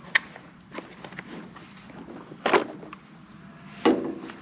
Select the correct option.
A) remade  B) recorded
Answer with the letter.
B